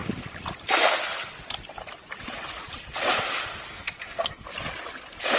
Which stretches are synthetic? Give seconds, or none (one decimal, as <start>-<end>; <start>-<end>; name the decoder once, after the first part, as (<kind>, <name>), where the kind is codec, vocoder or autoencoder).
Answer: 3.7-4.5 (codec, SNAC)